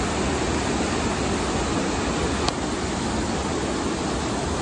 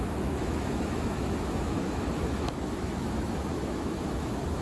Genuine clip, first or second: first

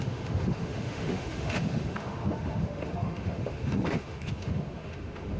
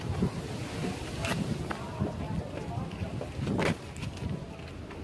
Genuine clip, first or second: second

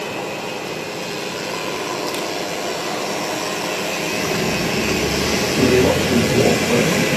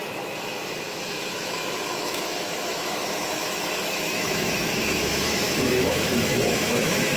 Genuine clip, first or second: first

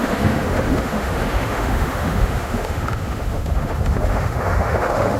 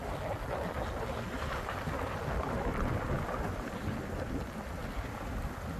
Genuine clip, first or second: second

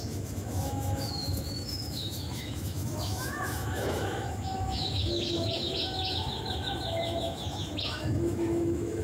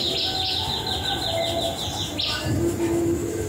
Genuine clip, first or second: second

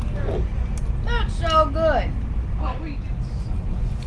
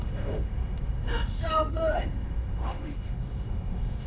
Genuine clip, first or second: first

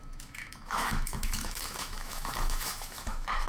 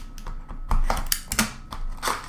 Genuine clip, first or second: second